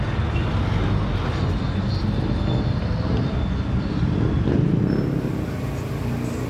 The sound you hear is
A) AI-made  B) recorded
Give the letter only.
B